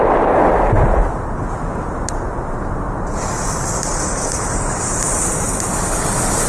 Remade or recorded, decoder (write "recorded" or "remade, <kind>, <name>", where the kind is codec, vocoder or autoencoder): recorded